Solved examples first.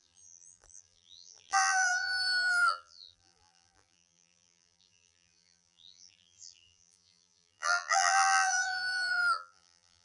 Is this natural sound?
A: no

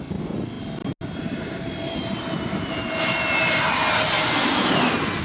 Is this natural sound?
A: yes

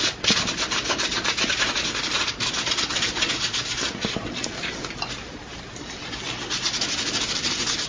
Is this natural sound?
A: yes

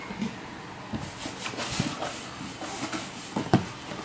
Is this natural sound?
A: yes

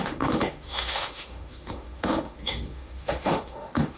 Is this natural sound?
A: no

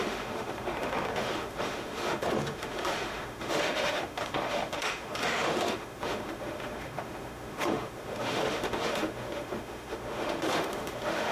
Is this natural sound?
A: no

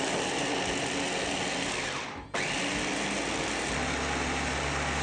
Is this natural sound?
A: yes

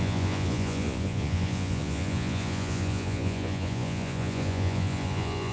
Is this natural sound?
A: no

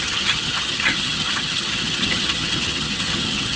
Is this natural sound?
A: no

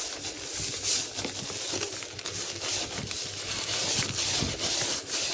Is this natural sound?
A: yes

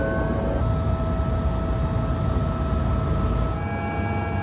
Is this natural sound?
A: yes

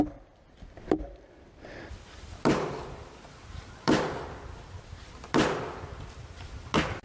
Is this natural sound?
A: yes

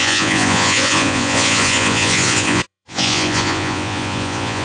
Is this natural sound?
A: no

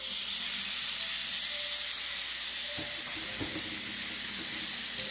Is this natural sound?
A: yes